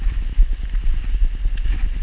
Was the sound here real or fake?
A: real